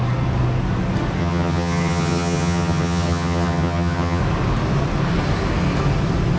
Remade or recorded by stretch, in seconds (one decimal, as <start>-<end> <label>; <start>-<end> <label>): 0.0-1.2 recorded; 1.2-4.2 remade; 4.2-6.4 recorded